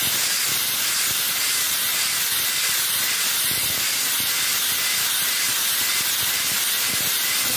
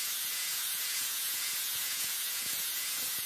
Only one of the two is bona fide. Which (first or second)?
first